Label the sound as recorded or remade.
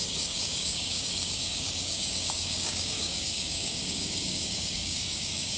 remade